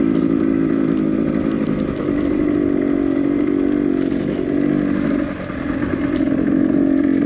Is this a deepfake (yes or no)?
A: no